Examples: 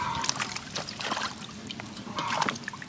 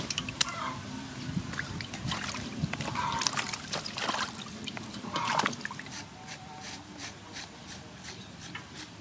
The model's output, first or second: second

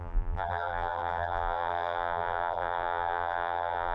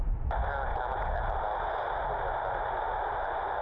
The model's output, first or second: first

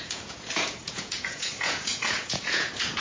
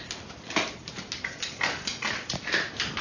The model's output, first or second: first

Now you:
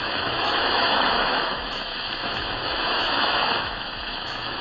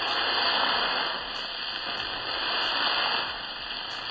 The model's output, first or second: first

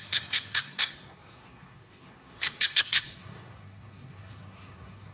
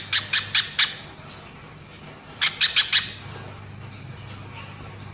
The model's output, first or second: first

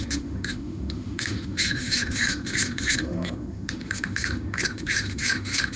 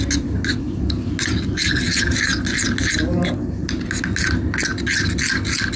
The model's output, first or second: first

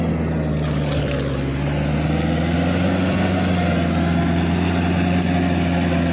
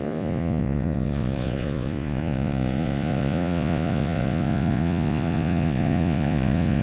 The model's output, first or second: second